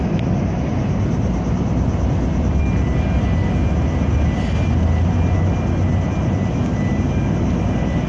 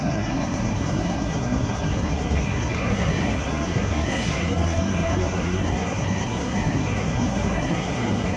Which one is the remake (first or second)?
second